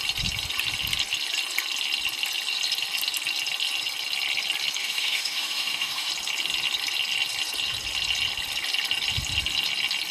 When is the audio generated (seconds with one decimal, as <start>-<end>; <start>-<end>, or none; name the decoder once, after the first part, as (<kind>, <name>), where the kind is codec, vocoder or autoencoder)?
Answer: 4.8-6.1 (autoencoder, DAC-VAE)